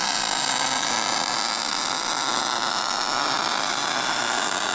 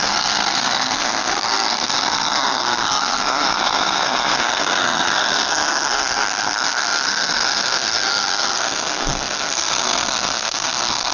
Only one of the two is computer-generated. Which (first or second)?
second